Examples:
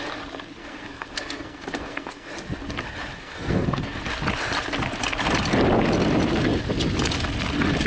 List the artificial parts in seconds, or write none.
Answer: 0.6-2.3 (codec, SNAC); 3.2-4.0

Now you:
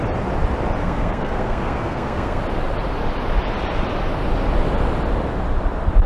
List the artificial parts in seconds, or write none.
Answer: 0.8-2.4 (codec, SNAC)

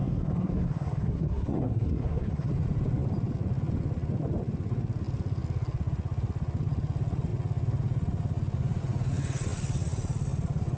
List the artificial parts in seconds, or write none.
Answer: 0.0-2.5 (codec, SNAC)

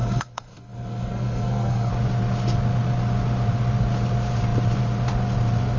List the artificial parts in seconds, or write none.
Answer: 0.0-1.9 (codec, SNAC)

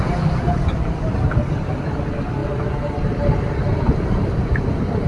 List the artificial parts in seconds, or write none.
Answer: none